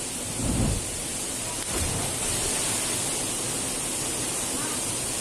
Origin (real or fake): real